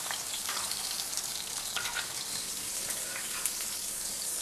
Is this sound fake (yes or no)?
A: yes